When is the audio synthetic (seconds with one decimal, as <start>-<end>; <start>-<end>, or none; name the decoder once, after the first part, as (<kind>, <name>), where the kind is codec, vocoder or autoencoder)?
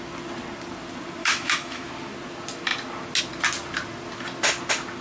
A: 1.2-1.9 (autoencoder, DAC-VAE)